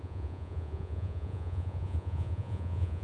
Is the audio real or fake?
fake